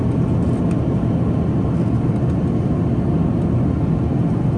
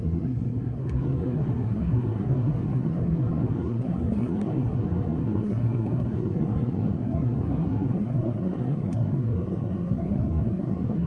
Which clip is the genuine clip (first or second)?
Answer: first